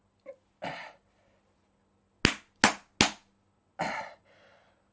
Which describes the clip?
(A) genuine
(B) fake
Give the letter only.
A